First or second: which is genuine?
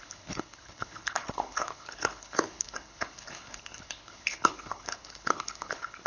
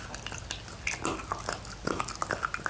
second